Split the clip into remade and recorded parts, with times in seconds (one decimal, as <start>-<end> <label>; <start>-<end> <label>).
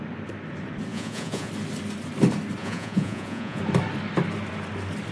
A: 0.0-0.9 recorded; 0.9-1.5 remade; 1.5-2.6 recorded; 2.6-3.6 remade; 3.6-5.1 recorded